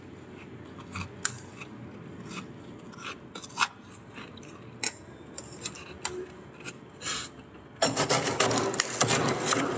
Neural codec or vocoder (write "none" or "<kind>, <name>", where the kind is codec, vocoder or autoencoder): none